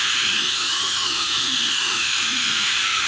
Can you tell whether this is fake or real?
fake